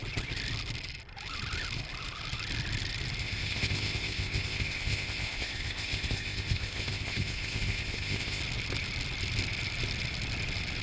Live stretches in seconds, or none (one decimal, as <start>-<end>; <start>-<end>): 0.0-3.2; 8.4-10.8